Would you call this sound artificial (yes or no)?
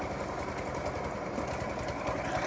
no